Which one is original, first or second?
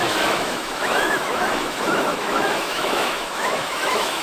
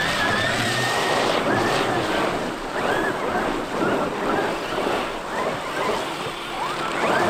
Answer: second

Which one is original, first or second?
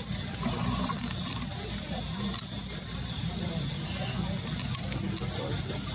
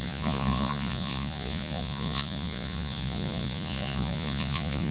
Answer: first